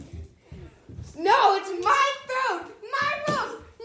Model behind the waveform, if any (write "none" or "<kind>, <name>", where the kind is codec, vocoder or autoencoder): none